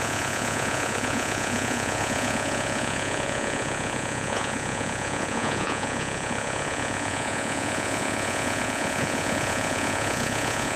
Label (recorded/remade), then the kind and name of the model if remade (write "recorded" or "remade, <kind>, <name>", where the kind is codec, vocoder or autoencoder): remade, vocoder, Vocos